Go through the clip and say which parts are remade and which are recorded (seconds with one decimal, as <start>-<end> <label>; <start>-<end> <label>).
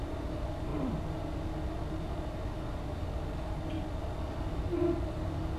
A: 0.0-5.6 recorded